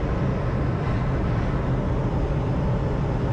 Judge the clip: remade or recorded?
recorded